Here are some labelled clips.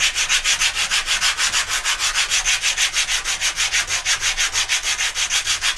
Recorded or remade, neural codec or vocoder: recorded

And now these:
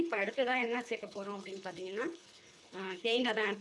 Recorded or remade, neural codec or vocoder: remade, codec, HILCodec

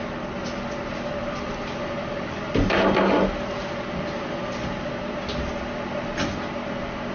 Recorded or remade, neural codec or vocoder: recorded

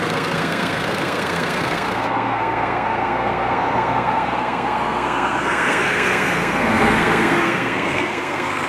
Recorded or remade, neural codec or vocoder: remade, codec, SNAC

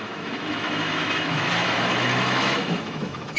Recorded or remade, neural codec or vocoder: remade, autoencoder, DAC-VAE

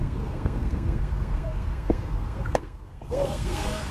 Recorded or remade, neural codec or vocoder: remade, codec, SNAC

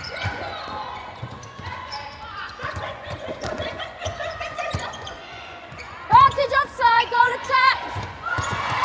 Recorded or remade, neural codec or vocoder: remade, vocoder, Vocos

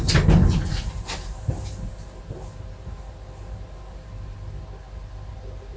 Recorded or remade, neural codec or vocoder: recorded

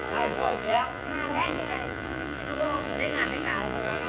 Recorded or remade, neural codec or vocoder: remade, vocoder, Vocos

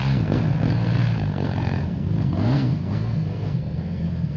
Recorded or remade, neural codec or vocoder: remade, codec, SNAC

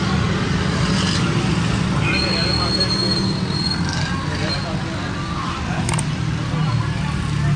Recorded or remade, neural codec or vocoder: recorded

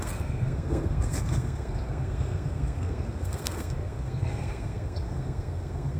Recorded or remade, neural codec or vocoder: remade, codec, SNAC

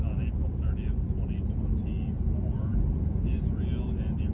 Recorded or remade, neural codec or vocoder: recorded